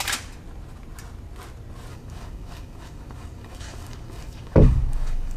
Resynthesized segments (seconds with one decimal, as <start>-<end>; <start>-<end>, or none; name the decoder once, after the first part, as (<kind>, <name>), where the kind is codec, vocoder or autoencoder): 1.9-5.4 (codec, DAC)